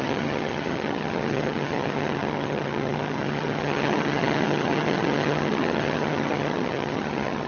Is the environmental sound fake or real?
fake